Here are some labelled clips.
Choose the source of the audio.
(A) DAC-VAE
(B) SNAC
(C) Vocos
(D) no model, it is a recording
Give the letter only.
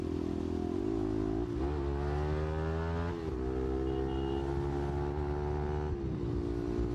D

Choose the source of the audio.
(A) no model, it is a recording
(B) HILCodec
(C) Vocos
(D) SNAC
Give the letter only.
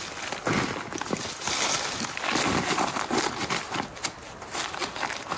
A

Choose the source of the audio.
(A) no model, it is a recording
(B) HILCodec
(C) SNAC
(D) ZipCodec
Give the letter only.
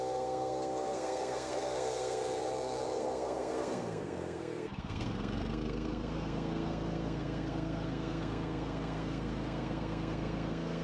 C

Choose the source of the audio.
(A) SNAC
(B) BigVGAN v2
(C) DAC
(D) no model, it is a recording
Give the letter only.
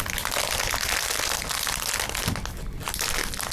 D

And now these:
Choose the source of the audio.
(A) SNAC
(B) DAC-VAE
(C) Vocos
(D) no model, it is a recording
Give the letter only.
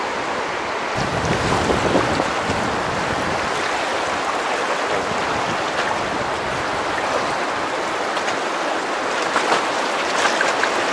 D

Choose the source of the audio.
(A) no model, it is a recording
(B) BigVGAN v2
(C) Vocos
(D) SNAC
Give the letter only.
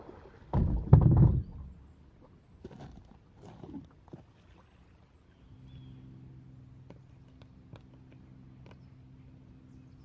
A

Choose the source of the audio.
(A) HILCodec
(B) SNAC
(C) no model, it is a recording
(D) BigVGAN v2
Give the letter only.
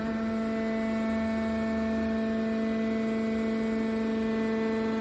C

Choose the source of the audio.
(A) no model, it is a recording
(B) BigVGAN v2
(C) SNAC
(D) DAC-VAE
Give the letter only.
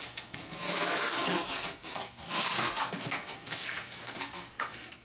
C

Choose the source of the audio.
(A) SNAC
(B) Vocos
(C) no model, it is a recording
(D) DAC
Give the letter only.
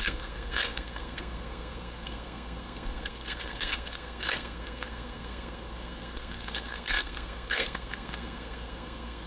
A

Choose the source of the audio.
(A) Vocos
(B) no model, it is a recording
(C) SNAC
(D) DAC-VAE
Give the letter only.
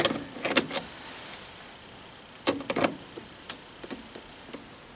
B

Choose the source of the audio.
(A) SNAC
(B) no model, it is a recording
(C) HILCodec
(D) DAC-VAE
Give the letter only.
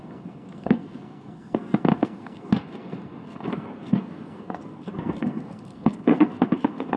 A